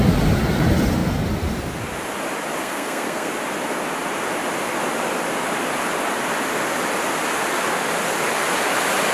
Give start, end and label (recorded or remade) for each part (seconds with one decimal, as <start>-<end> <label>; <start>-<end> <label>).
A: 0.0-2.6 recorded; 2.6-3.3 remade; 3.3-9.1 recorded